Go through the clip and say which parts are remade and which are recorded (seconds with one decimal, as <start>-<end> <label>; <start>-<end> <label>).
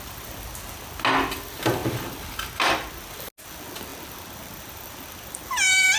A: 0.0-3.9 recorded; 3.9-6.0 remade